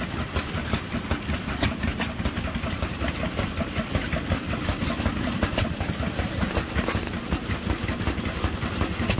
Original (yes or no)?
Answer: yes